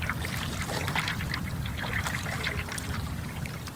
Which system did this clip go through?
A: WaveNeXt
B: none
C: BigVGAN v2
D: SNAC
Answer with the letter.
C